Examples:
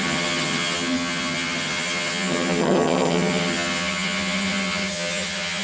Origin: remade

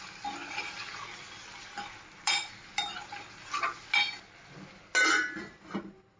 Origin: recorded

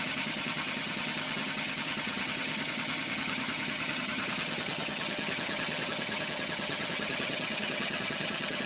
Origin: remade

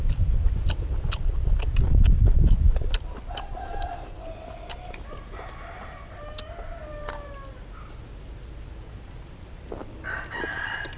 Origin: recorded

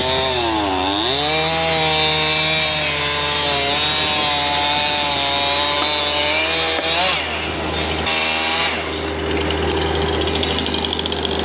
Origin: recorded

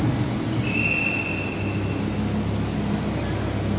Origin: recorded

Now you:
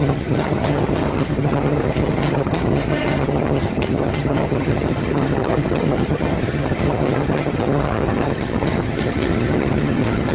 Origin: remade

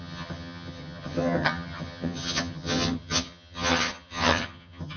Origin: remade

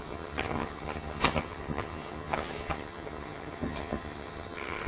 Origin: remade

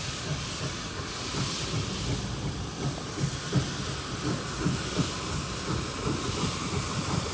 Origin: recorded